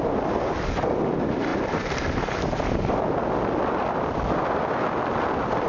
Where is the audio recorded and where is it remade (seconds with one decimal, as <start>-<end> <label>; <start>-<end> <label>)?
0.0-1.5 recorded; 1.5-2.2 remade; 2.2-5.7 recorded